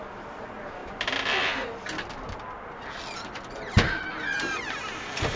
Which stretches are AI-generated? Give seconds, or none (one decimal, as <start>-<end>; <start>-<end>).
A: none